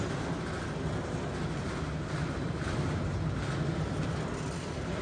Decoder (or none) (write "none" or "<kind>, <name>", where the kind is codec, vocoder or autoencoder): none